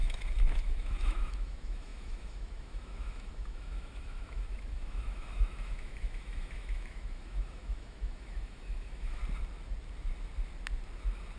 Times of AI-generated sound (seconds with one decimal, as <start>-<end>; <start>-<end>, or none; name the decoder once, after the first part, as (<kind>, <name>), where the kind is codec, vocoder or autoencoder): 0.0-9.2 (autoencoder, DAC-VAE)